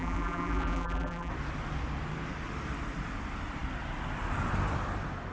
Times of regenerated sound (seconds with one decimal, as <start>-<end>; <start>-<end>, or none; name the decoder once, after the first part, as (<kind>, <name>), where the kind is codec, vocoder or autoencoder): 0.0-1.3 (vocoder, BigVGAN v2)